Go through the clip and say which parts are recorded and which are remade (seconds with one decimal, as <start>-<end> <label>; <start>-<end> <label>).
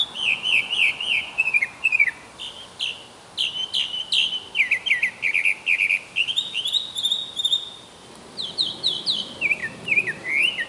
0.0-2.3 remade; 2.3-10.7 recorded